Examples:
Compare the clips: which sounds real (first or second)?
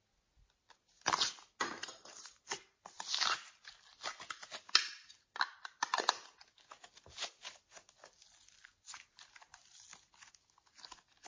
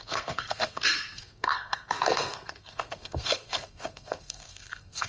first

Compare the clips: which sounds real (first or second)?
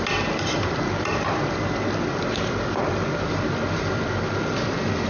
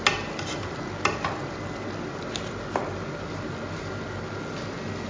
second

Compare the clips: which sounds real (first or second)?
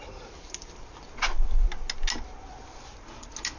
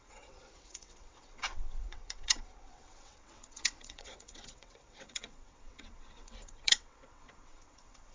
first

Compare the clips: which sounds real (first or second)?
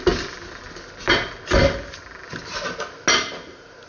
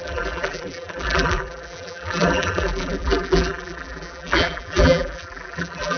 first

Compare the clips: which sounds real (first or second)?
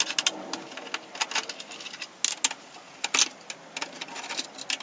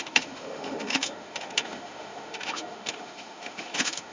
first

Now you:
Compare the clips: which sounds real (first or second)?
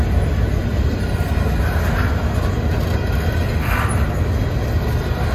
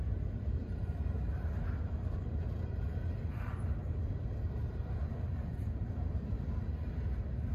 first